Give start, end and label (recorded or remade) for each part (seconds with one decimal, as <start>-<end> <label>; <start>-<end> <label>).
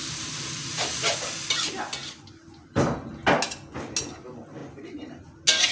0.0-0.7 remade; 0.7-4.6 recorded; 4.6-5.2 remade; 5.2-5.7 recorded